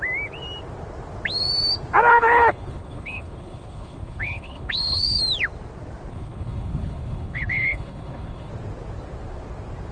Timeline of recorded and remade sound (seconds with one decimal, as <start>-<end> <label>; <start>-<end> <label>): 0.0-2.1 recorded; 2.1-5.2 remade; 5.2-6.1 recorded; 6.1-8.5 remade; 8.5-9.9 recorded